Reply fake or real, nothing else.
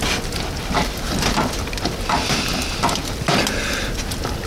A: real